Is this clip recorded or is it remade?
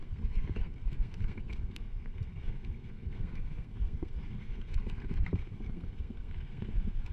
remade